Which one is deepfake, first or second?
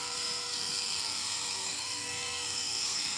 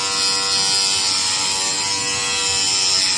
first